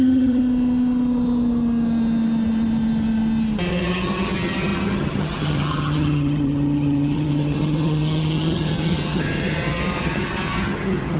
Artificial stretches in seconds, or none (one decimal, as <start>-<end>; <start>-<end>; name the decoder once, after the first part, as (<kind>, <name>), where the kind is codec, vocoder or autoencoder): 0.0-0.4 (vocoder, HiFi-GAN); 3.7-11.2